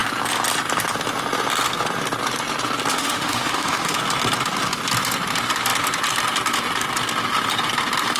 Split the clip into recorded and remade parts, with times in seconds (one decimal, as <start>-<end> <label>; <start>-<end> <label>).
0.0-2.9 recorded; 2.9-4.0 remade; 4.0-8.2 recorded